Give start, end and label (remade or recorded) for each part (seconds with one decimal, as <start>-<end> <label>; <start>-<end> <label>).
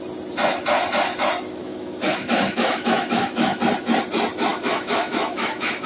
0.0-1.6 recorded; 1.6-3.6 remade; 3.6-4.5 recorded; 4.5-5.9 remade